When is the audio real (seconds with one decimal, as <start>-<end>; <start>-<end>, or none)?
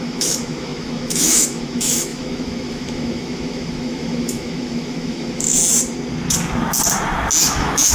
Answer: 5.6-7.4